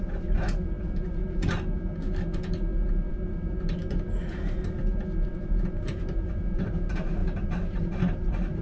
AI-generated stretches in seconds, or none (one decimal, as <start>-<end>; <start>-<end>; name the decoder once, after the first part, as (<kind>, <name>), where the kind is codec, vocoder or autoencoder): 0.0-1.2 (vocoder, BigVGAN v2); 3.1-3.8; 5.3-8.6